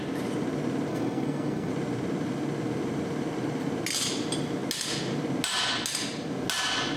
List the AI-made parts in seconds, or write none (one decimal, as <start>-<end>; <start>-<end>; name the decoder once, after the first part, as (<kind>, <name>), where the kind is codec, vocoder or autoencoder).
0.9-1.7 (codec, SNAC)